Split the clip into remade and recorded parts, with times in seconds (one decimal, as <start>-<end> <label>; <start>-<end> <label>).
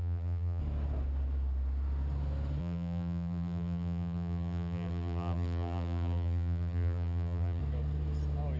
0.0-0.6 remade; 0.6-2.6 recorded; 2.6-7.6 remade; 7.6-8.6 recorded